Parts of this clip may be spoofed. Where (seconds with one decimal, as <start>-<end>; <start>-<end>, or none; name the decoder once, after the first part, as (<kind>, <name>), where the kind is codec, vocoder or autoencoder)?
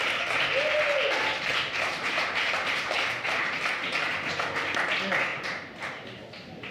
1.5-4.3 (vocoder, BigVGAN v2); 5.3-6.3